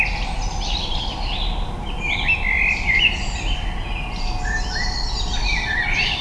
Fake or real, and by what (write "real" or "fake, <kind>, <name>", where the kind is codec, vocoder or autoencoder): real